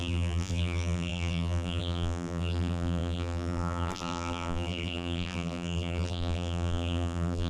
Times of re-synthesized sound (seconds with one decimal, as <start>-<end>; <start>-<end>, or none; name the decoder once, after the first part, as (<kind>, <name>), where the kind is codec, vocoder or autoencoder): 0.0-7.5 (vocoder, BigVGAN v2)